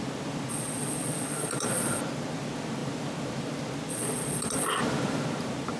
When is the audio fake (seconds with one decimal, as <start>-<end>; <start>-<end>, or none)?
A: 0.5-2.0; 3.9-4.8